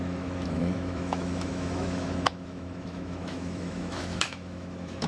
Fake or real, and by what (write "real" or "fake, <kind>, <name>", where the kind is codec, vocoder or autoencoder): fake, autoencoder, DAC-VAE